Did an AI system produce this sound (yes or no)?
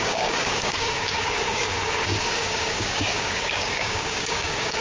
yes